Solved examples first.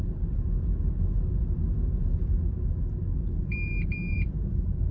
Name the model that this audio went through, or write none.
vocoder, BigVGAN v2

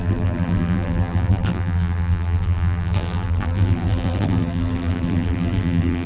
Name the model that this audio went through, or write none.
vocoder, BigVGAN v2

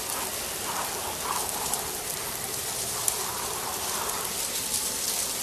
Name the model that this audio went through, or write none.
none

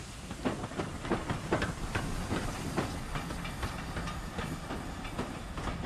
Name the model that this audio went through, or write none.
none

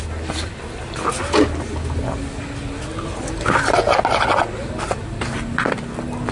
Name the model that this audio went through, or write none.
none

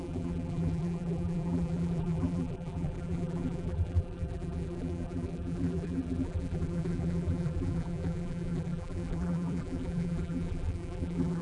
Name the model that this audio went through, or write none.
vocoder, BigVGAN v2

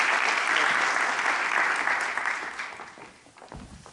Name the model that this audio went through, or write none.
none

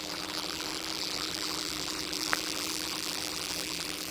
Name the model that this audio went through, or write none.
vocoder, BigVGAN v2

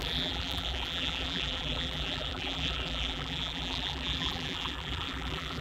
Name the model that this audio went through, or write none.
vocoder, BigVGAN v2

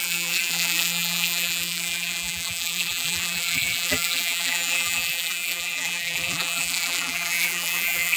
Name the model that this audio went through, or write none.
vocoder, BigVGAN v2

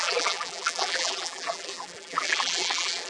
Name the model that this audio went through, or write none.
vocoder, BigVGAN v2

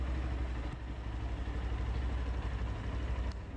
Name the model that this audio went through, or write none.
none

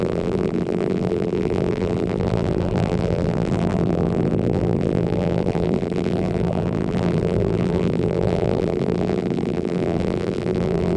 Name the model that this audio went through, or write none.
vocoder, BigVGAN v2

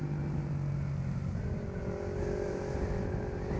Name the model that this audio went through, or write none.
none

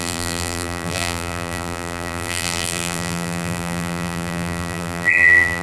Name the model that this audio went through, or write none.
vocoder, BigVGAN v2